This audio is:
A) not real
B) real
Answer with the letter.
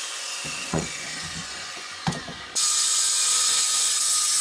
A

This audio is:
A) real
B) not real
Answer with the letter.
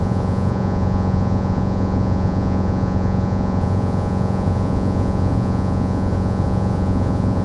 B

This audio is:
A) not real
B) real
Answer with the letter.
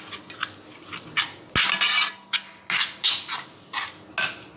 B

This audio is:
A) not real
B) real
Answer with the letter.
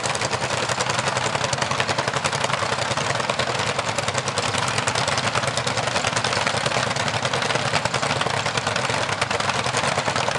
B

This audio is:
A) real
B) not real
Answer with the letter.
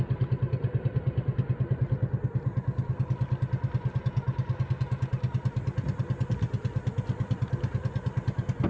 A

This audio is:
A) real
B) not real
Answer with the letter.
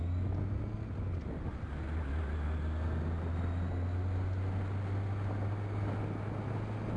A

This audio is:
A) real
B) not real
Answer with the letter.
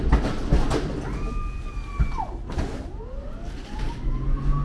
A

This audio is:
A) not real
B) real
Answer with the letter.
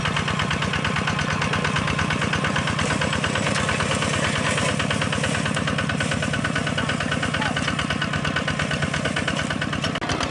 B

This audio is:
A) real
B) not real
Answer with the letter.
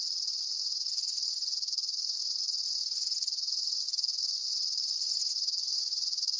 B